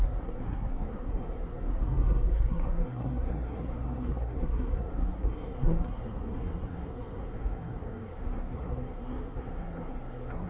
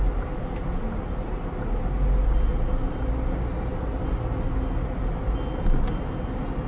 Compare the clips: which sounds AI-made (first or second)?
first